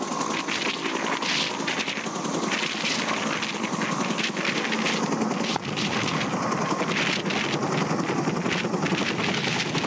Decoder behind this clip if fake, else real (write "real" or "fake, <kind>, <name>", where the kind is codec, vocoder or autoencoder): real